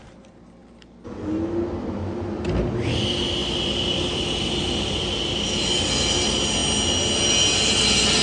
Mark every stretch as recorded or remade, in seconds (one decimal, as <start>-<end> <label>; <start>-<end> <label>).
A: 0.0-8.2 recorded